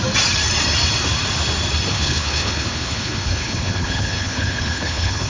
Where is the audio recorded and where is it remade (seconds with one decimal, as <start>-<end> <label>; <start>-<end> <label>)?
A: 0.0-1.9 recorded; 1.9-5.3 remade